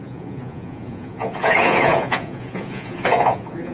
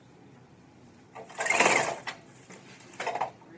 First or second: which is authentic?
second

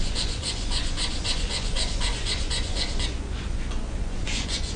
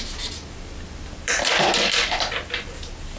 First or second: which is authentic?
second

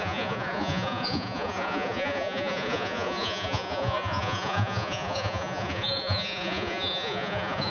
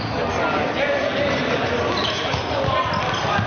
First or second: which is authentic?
second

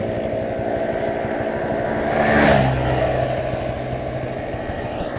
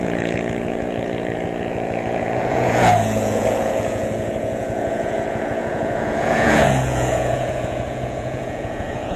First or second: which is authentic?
first